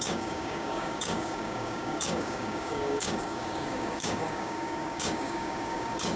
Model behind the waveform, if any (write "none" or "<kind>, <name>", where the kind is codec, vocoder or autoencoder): codec, DAC